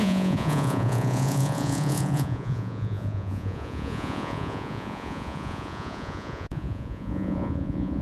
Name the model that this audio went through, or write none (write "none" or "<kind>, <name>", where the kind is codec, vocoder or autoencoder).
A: vocoder, Vocos